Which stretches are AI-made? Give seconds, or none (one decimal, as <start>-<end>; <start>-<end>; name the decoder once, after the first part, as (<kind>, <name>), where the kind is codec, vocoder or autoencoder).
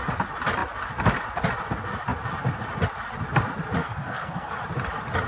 3.8-4.6 (codec, SNAC)